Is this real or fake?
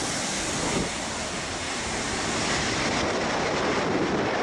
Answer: real